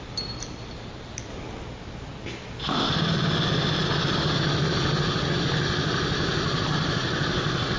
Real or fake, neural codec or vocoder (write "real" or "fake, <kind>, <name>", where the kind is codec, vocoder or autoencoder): real